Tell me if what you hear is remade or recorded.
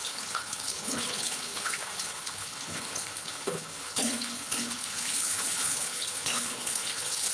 remade